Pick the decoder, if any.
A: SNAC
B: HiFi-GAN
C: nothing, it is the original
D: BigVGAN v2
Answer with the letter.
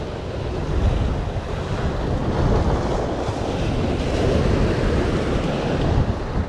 C